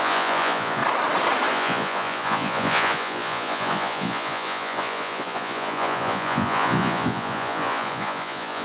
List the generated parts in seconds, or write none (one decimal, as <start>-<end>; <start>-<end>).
0.0-0.8; 1.5-8.6